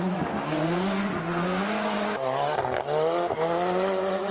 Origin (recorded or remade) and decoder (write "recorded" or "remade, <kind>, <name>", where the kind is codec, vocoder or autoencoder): recorded